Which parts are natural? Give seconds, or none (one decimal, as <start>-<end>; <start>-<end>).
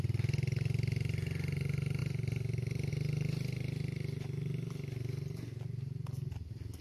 0.0-2.0; 2.9-6.8